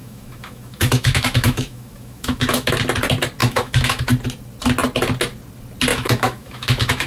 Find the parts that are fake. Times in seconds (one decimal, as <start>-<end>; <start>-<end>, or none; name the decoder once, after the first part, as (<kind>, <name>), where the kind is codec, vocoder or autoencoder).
0.0-2.7 (autoencoder, DAC-VAE); 3.4-4.1; 5.9-7.1